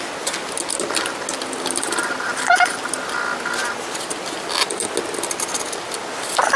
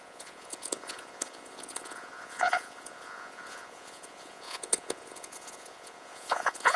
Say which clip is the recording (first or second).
first